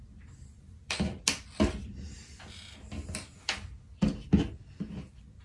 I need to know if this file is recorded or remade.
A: recorded